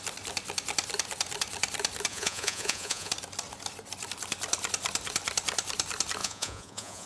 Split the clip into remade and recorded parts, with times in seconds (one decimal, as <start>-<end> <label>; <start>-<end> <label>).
0.0-2.1 recorded; 2.1-3.1 remade; 3.1-6.2 recorded; 6.2-7.1 remade

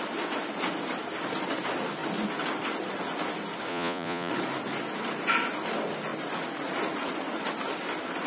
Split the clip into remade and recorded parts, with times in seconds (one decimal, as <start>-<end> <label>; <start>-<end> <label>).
0.0-3.7 recorded; 3.7-4.3 remade; 4.3-8.3 recorded

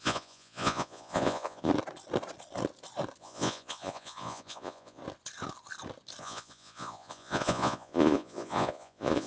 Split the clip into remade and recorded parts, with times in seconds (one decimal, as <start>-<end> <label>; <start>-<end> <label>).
0.0-1.7 remade; 1.7-3.2 recorded; 3.2-5.0 remade; 5.0-6.2 recorded; 6.2-9.3 remade

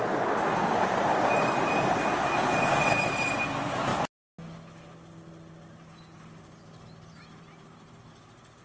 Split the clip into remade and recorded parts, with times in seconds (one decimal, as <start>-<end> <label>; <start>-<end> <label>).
0.0-8.6 recorded

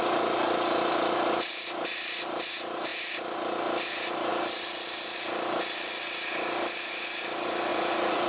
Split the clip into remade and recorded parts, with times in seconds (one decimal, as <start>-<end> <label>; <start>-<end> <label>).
0.0-7.7 recorded; 7.7-8.3 remade

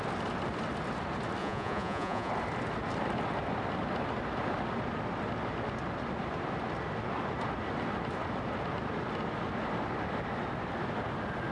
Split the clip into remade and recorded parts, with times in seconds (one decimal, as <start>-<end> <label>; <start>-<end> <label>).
0.0-1.4 recorded; 1.4-2.3 remade; 2.3-11.5 recorded

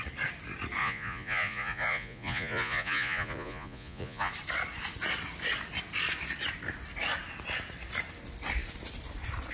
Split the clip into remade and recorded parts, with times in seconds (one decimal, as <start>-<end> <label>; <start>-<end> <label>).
0.0-0.8 recorded; 0.8-4.3 remade; 4.3-9.5 recorded